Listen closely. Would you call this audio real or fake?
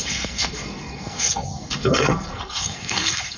fake